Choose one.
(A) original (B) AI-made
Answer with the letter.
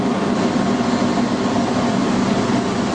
A